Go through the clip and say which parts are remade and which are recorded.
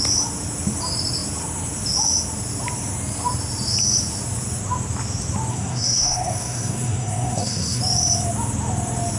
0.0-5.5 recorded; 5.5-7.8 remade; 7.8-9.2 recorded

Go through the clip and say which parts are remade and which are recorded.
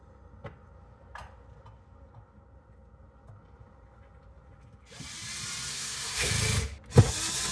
0.0-5.7 recorded; 5.7-6.3 remade; 6.3-7.5 recorded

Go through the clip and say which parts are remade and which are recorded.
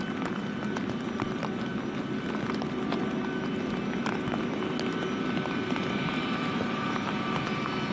0.0-7.9 recorded